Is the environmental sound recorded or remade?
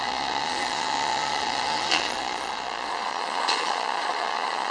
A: remade